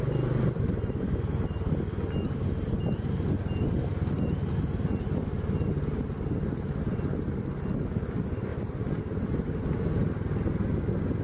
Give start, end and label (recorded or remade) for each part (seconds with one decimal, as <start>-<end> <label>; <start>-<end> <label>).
0.0-11.2 recorded